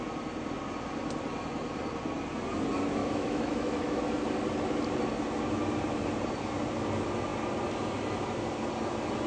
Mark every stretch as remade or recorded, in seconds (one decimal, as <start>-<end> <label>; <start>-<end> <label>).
0.0-3.0 recorded; 3.0-4.0 remade; 4.0-9.3 recorded